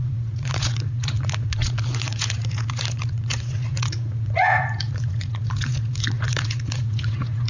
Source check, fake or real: fake